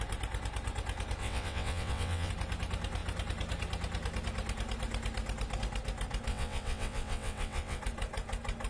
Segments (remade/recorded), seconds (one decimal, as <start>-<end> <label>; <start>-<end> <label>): 0.0-1.2 recorded; 1.2-2.3 remade; 2.3-6.3 recorded; 6.3-7.8 remade; 7.8-8.7 recorded